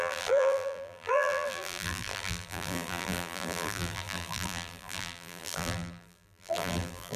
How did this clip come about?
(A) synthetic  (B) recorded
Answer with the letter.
A